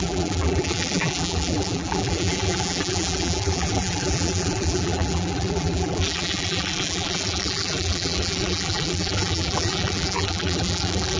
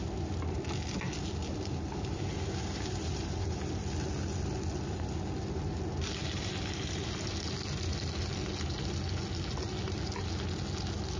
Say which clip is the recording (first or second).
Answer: second